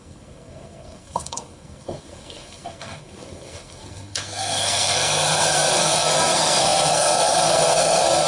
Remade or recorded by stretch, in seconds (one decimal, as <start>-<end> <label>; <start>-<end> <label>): 0.0-8.3 remade